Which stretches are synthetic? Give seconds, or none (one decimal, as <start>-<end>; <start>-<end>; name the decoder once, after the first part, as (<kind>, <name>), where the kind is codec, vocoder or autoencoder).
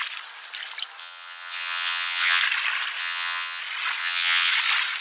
1.0-2.4 (vocoder, WaveNeXt); 3.0-3.6; 4.0-4.5